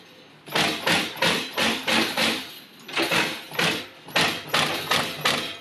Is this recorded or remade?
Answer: recorded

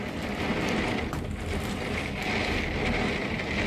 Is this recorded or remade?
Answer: recorded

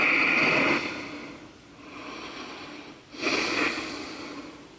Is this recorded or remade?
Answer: recorded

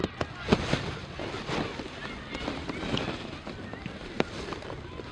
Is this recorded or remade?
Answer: remade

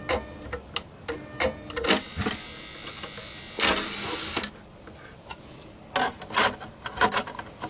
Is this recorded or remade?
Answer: recorded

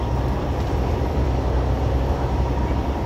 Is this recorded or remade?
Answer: remade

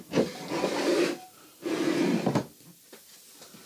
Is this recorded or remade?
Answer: recorded